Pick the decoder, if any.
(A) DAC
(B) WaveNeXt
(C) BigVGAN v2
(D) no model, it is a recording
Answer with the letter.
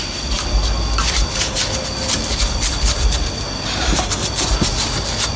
D